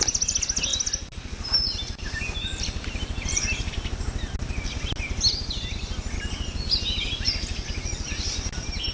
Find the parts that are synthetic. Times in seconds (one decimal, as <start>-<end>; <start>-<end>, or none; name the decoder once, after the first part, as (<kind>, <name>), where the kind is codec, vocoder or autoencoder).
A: 2.5-3.7 (vocoder, BigVGAN v2)